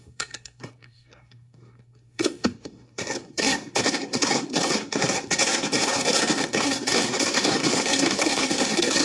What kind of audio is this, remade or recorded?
remade